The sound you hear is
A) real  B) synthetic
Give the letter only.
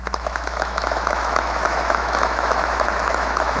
B